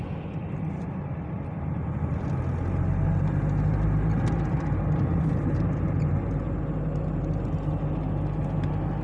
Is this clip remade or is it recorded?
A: recorded